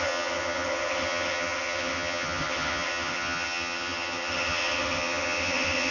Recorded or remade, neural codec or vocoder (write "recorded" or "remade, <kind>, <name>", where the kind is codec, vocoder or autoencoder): remade, vocoder, HiFi-GAN